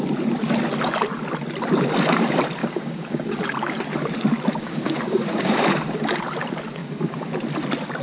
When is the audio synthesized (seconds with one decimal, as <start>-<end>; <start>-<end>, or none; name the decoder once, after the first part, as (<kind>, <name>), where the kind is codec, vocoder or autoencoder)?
2.6-3.4 (codec, DAC); 4.6-5.6; 6.8-7.3